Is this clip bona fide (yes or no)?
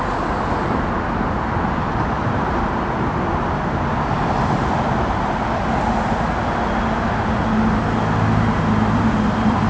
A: yes